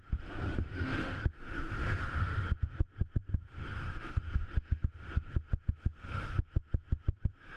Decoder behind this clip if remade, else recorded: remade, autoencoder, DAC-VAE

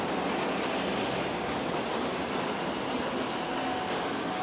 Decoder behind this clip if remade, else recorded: recorded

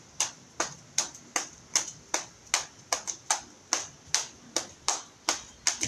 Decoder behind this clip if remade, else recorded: recorded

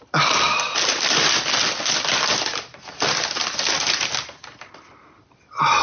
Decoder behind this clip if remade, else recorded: recorded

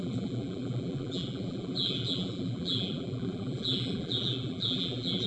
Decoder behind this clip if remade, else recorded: remade, vocoder, BigVGAN v2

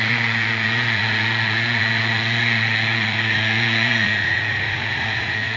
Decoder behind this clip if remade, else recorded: remade, vocoder, Vocos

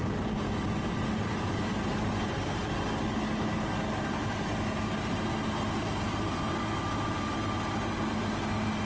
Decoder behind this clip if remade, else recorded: recorded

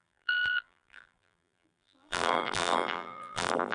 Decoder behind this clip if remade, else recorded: remade, vocoder, BigVGAN v2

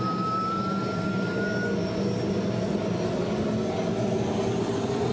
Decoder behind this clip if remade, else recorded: recorded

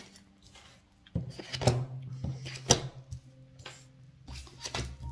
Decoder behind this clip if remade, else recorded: recorded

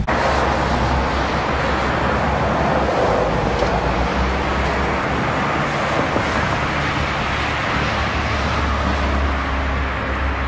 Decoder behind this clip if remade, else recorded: recorded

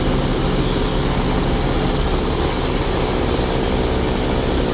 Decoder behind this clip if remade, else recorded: recorded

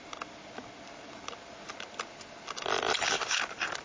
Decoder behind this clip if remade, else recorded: recorded